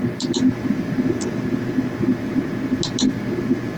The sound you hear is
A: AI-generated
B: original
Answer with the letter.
B